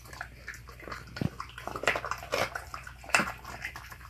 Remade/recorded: recorded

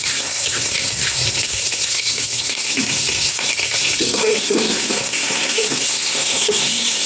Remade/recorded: remade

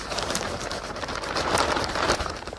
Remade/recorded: remade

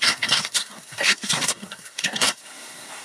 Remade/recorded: remade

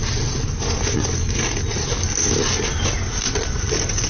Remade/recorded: recorded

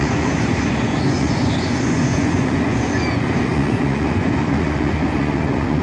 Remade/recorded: remade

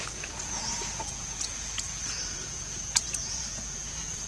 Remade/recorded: remade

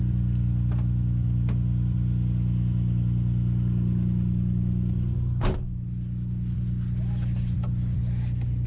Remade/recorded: recorded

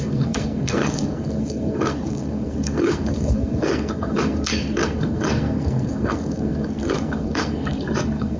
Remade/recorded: remade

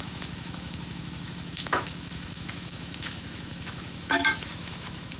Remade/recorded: remade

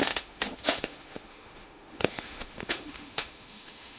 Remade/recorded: remade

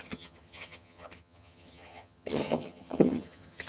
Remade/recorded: remade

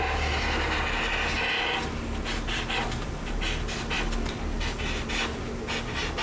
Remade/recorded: recorded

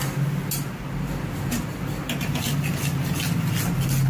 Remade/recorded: recorded